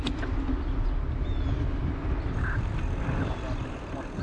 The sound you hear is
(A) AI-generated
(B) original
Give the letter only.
B